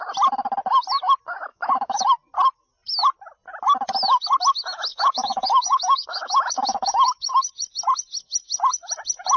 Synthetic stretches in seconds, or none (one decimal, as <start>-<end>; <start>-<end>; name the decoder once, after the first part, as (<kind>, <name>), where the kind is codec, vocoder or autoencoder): 1.5-2.0 (autoencoder, DAC-VAE); 4.9-7.5

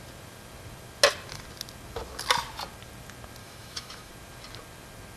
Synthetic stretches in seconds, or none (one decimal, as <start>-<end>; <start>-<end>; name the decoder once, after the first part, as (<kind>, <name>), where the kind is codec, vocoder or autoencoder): 3.4-4.1 (autoencoder, DAC-VAE)

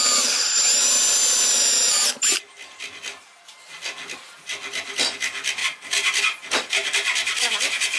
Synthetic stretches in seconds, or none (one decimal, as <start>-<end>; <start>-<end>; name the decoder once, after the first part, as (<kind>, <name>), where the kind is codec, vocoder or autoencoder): none

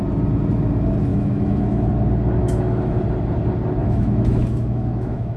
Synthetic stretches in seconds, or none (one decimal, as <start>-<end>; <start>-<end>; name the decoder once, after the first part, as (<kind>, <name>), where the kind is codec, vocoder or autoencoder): 1.1-1.9 (autoencoder, DAC-VAE); 2.4-3.0; 3.8-5.4

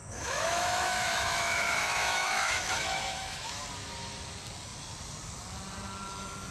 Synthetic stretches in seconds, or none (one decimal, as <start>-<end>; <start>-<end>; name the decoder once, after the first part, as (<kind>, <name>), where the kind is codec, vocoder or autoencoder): 0.0-3.6 (autoencoder, DAC-VAE)